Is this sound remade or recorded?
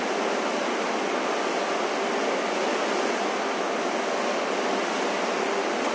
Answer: recorded